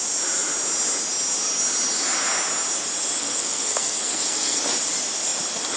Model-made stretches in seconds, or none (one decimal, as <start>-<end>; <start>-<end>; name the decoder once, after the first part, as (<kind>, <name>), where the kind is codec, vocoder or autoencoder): 3.2-4.6 (codec, SNAC)